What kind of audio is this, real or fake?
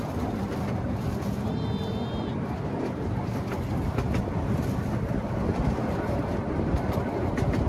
real